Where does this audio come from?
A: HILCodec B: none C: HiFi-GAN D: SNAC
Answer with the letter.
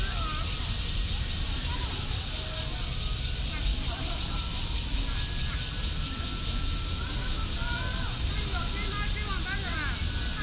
B